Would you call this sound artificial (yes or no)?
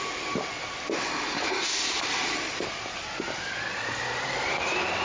no